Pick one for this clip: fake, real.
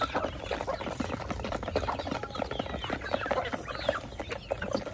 real